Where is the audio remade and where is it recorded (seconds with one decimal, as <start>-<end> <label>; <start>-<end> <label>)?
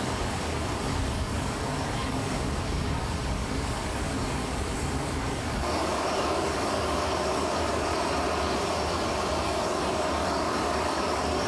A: 0.0-7.9 remade; 7.9-9.4 recorded; 9.4-11.5 remade